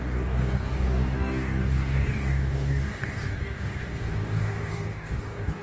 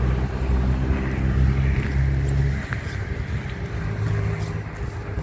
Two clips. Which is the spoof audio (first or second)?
first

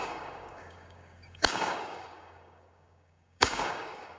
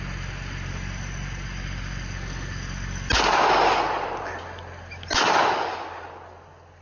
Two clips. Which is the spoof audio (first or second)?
first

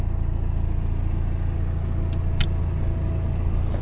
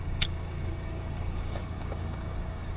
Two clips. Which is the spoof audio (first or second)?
second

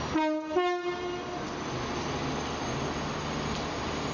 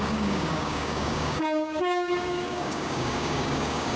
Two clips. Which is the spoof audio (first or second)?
second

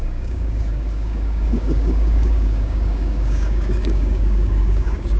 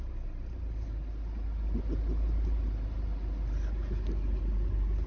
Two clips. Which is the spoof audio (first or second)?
first